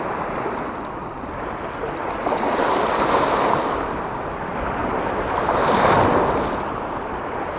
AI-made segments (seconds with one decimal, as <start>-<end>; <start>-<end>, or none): none